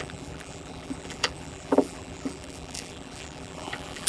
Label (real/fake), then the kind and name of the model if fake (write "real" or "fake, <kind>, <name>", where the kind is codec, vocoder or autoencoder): fake, vocoder, BigVGAN v2